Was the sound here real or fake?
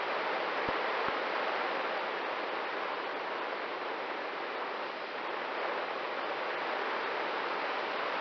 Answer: real